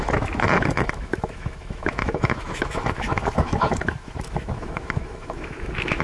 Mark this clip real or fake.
fake